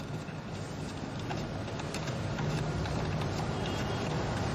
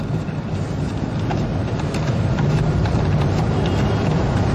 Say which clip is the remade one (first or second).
second